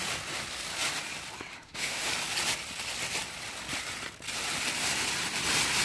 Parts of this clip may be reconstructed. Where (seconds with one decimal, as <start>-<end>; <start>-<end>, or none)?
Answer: 1.5-2.1